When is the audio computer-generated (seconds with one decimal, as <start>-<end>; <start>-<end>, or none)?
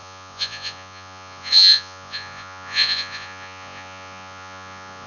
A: 0.0-5.1